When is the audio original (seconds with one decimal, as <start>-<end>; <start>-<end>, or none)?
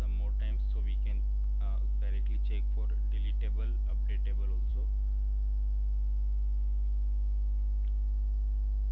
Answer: 0.0-8.9